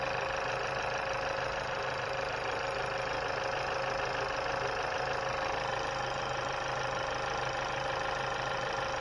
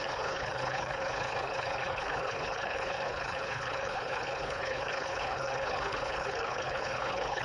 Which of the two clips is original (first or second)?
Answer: first